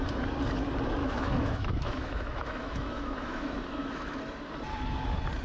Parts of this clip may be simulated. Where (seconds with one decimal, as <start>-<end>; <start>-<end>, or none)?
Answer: 1.0-4.2